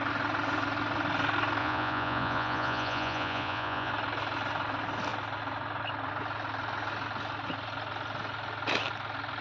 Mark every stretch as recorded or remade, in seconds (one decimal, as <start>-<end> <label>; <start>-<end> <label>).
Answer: 0.0-1.6 recorded; 1.6-3.9 remade; 3.9-9.4 recorded